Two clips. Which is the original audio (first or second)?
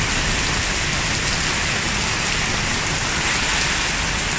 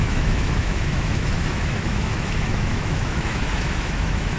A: first